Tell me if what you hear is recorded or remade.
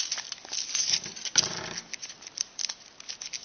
recorded